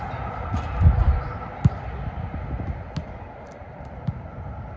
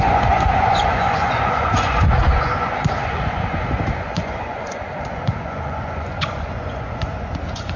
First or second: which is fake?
second